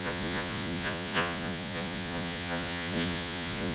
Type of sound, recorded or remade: remade